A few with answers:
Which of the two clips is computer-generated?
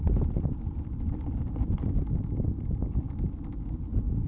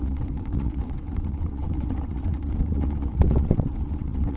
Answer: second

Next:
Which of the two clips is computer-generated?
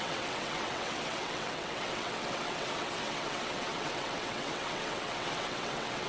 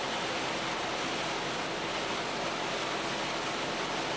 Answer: first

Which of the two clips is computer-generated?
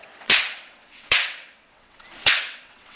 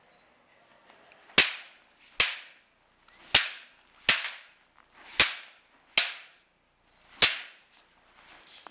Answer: first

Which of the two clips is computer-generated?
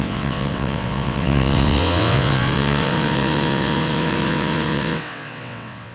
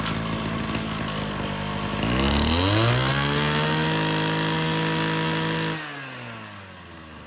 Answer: first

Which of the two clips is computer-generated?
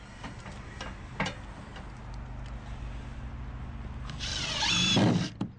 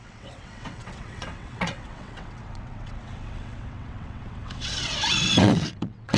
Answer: second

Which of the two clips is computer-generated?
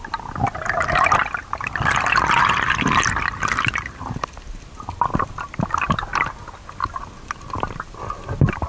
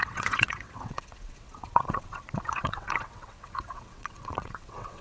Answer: second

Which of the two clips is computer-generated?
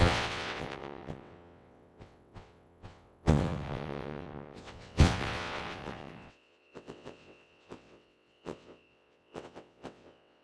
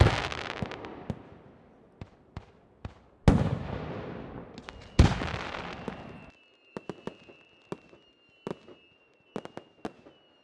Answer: first